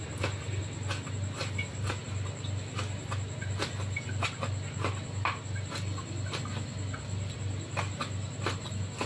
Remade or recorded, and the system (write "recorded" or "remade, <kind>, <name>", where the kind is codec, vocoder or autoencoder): recorded